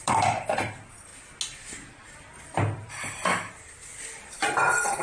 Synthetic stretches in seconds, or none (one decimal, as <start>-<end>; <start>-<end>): 0.0-1.1; 2.1-3.3; 4.0-5.0